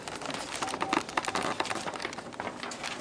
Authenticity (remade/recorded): recorded